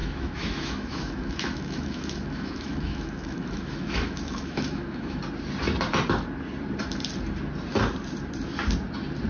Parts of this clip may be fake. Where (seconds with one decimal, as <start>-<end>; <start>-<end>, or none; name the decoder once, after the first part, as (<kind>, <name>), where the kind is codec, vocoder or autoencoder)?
0.0-5.2 (autoencoder, DAC-VAE)